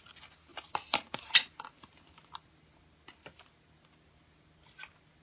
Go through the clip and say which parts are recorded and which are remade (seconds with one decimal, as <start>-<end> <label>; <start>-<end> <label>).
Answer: 0.0-0.5 recorded; 0.5-2.8 remade; 2.8-5.2 recorded